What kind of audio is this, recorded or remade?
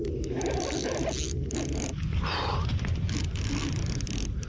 recorded